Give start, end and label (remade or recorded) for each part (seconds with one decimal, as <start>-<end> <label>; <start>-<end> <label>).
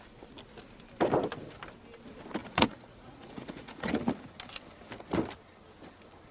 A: 0.0-2.4 recorded; 2.4-4.0 remade; 4.0-6.3 recorded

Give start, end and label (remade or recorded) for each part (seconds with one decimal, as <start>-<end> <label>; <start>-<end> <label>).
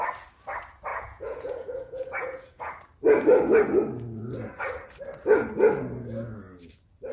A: 0.0-0.9 recorded; 0.9-2.8 remade; 2.8-7.1 recorded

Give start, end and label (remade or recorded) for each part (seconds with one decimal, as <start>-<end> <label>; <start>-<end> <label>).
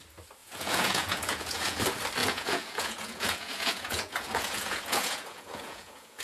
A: 0.0-0.4 recorded; 0.4-1.8 remade; 1.8-2.2 recorded; 2.2-6.2 remade